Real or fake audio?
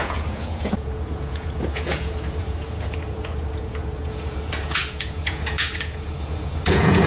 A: fake